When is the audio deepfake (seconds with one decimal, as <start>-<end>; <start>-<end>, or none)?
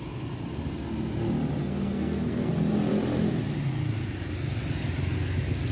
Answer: 1.6-2.5